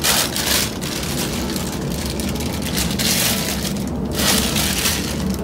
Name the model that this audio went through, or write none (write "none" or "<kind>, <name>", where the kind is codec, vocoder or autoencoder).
none